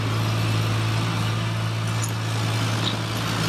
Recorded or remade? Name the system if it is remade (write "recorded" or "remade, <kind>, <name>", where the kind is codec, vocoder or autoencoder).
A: recorded